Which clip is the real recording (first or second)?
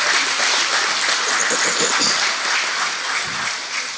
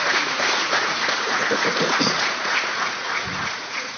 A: first